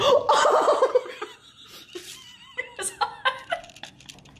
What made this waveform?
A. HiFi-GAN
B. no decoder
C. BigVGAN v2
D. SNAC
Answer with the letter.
B